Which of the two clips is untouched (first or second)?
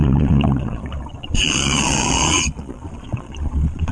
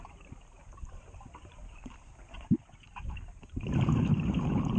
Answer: second